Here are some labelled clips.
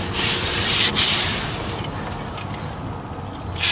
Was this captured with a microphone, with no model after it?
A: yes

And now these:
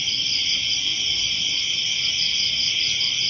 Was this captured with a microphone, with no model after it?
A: yes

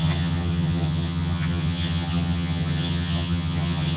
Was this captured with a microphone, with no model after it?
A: no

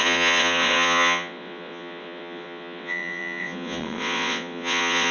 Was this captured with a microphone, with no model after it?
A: no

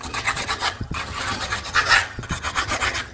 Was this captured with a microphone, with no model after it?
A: no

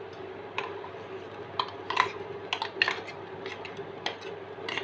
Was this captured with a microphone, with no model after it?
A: yes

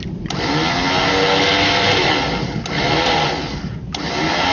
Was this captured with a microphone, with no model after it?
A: yes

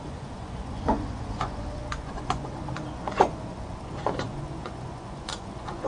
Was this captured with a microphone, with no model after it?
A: no